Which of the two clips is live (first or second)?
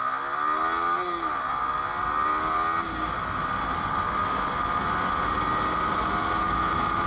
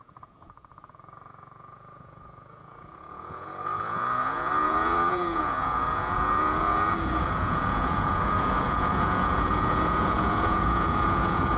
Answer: first